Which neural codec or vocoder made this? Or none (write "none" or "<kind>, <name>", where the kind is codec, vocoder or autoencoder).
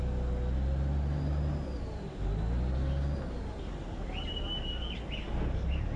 none